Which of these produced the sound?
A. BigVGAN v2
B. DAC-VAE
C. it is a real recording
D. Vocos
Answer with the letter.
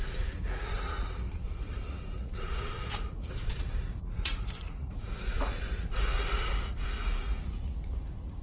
D